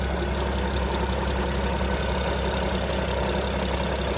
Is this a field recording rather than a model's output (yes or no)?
yes